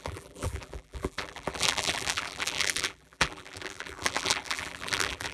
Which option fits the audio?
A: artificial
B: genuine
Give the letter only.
A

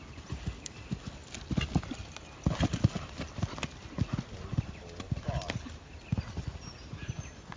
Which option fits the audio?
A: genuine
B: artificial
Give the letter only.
A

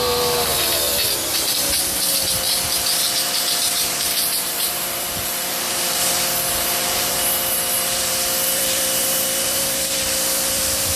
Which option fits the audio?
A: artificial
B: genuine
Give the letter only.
A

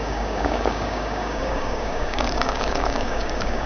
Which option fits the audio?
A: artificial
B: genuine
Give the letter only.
A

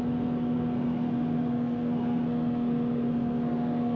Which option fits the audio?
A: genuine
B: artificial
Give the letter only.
B